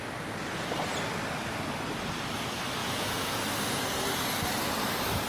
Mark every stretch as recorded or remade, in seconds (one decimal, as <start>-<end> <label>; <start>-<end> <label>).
0.0-2.8 recorded; 2.8-3.4 remade; 3.4-5.3 recorded